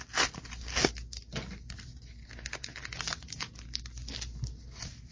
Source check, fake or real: real